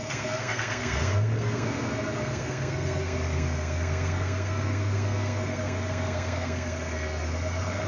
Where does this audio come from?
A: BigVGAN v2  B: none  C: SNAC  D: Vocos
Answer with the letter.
C